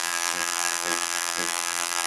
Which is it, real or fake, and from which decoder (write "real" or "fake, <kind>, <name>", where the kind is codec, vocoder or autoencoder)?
fake, vocoder, BigVGAN v2